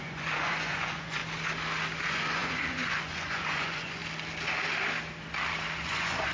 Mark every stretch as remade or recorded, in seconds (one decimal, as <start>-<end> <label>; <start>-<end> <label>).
0.0-1.2 remade; 1.2-2.0 recorded; 2.0-4.0 remade; 4.0-5.8 recorded; 5.8-6.3 remade